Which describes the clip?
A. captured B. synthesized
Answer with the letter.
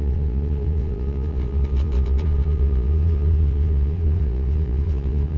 B